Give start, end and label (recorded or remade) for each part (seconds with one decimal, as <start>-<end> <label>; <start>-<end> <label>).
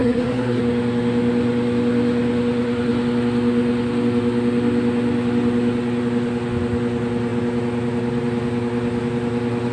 0.0-0.6 remade; 0.6-9.7 recorded